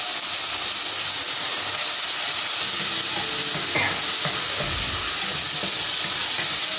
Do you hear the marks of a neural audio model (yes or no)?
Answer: no